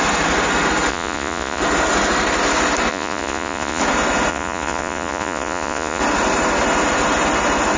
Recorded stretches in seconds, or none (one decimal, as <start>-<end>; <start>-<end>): 0.0-0.9; 1.6-2.9; 3.8-4.3; 6.0-7.8